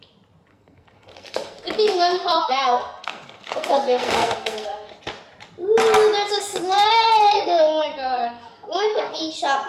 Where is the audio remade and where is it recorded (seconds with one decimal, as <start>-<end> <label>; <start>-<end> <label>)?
0.0-0.5 recorded; 0.5-5.0 remade; 5.0-6.3 recorded; 6.3-9.2 remade; 9.2-9.7 recorded